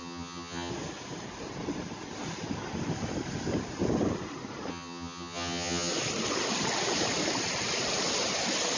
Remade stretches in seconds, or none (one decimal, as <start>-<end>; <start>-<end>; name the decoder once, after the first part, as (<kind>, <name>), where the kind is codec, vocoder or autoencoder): 0.0-0.7 (vocoder, HiFi-GAN); 4.7-5.9